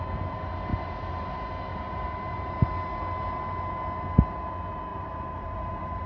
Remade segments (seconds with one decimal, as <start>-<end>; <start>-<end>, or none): 0.7-1.2; 1.7-2.6; 4.9-6.1